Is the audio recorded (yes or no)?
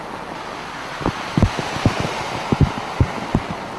yes